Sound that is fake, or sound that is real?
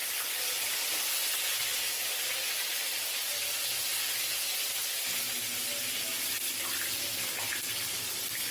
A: real